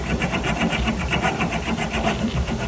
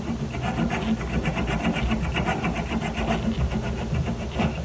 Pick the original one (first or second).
second